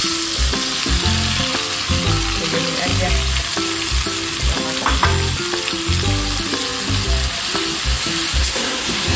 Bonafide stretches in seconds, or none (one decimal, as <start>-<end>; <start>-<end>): 0.0-8.4